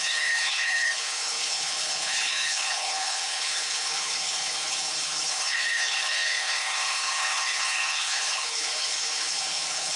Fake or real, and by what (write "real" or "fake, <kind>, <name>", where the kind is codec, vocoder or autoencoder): fake, codec, HILCodec